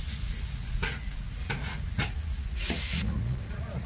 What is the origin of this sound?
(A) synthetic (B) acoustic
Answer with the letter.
A